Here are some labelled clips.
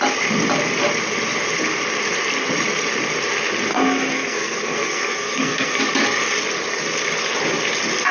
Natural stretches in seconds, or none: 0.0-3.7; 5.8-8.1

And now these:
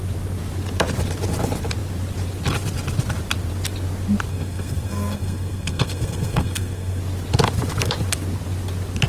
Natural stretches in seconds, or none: 0.0-4.3; 7.0-9.1

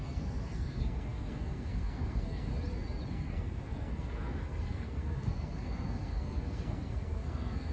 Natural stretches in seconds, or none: 2.5-3.1